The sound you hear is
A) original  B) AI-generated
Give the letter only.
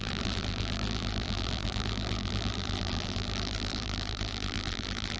B